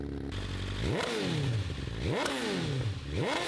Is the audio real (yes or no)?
yes